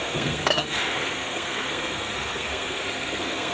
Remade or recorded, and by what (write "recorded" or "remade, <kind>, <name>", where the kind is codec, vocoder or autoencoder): remade, codec, SNAC